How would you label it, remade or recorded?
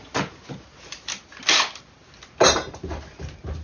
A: recorded